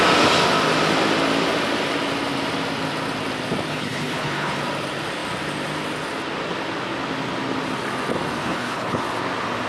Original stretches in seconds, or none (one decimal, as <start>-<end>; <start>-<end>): 0.0-3.7; 4.6-8.4; 9.0-9.7